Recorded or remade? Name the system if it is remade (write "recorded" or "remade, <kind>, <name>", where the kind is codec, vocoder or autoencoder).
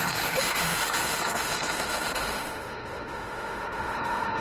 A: remade, autoencoder, DAC-VAE